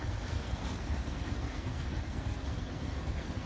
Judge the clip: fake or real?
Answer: fake